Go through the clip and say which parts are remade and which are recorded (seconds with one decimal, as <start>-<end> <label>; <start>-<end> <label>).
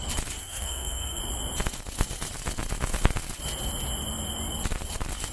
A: 0.0-0.4 recorded; 0.4-1.2 remade; 1.2-5.3 recorded